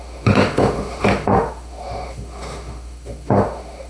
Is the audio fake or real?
fake